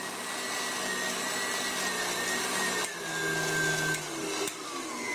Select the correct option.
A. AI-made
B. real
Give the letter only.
B